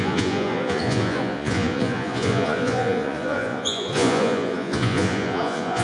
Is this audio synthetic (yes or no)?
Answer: yes